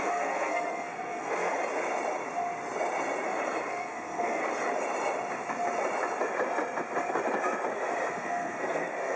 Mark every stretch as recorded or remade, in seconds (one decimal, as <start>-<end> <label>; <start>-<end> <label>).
0.0-1.5 remade; 1.5-3.7 recorded; 3.7-4.4 remade; 4.4-8.1 recorded; 8.1-9.2 remade